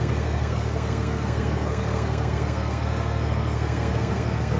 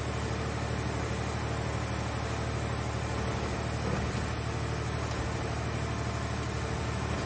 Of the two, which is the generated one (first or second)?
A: first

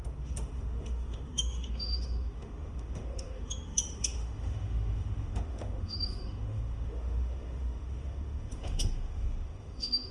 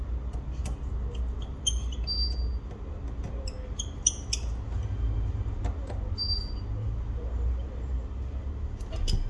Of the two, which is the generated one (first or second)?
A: first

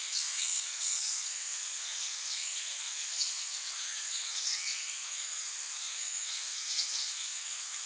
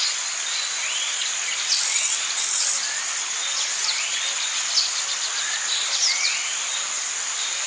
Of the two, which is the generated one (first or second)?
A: first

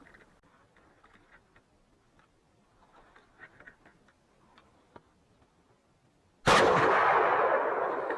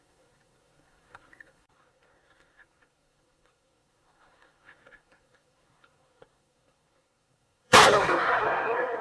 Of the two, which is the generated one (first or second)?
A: second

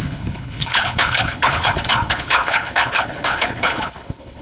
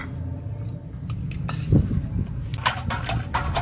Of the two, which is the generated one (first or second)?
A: first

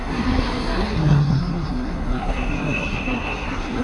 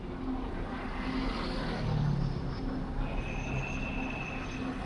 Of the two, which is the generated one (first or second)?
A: first